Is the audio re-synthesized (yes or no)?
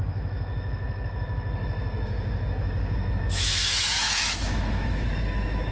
yes